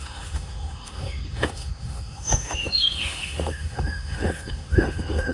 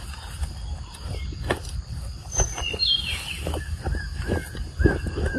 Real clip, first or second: second